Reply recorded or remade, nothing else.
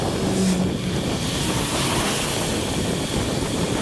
recorded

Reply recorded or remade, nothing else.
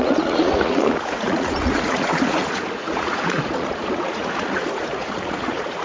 remade